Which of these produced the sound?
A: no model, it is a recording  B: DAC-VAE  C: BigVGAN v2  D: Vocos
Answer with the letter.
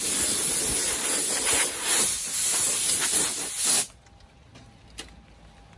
A